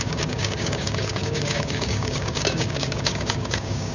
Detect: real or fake fake